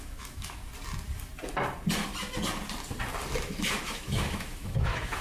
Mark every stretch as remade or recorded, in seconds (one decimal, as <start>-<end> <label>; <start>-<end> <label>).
0.0-0.6 remade; 0.6-3.6 recorded; 3.6-5.2 remade